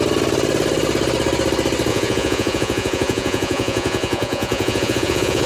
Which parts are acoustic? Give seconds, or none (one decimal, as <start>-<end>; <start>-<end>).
0.0-1.9